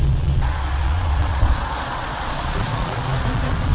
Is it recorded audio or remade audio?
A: remade